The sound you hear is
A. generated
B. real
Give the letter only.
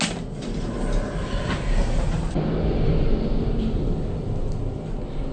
B